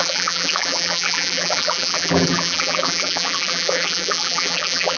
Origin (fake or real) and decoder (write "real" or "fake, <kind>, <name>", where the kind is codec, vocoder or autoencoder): fake, vocoder, BigVGAN v2